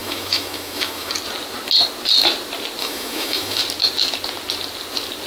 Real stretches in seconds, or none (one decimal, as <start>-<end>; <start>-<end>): 1.1-2.8; 3.6-5.3